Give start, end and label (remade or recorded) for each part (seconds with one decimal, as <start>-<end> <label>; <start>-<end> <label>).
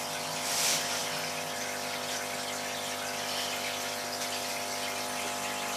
0.0-5.8 recorded